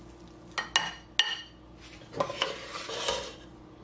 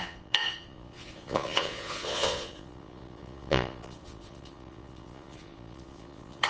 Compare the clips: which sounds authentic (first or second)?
first